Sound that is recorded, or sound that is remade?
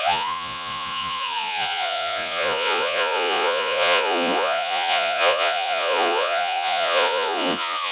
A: remade